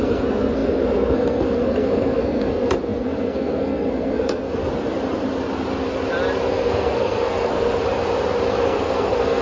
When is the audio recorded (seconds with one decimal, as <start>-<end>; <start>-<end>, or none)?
4.6-6.5; 7.8-8.5